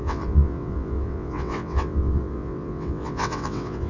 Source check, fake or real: fake